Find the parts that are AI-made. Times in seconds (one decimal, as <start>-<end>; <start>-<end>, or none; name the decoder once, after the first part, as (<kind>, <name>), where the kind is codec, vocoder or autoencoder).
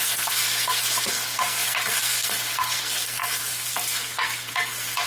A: 0.0-5.1 (codec, SNAC)